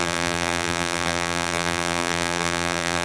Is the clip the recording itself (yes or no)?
no